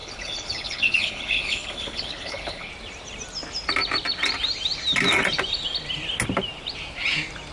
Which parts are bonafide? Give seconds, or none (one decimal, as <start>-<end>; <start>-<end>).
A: 2.7-7.5